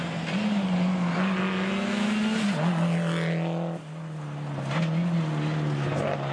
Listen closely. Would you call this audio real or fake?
real